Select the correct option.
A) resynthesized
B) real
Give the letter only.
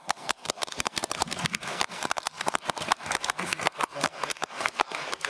A